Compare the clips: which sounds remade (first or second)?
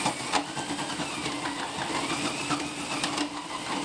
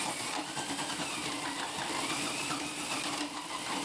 second